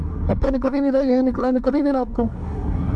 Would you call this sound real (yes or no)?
no